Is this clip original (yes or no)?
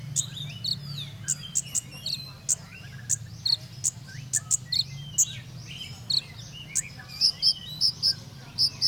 yes